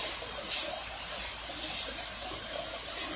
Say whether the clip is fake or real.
real